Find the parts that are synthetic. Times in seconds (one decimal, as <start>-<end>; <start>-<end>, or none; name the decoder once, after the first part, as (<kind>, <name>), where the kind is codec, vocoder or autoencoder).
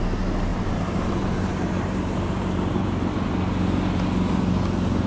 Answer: 0.5-3.1 (vocoder, BigVGAN v2)